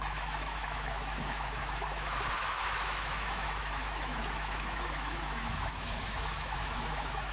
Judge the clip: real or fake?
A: fake